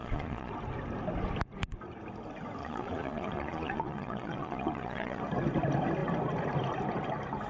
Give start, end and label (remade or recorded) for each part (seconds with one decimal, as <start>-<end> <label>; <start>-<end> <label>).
0.0-0.5 remade; 0.5-2.6 recorded; 2.6-5.2 remade; 5.2-7.5 recorded